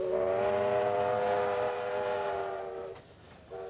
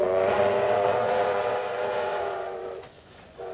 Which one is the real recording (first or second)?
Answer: first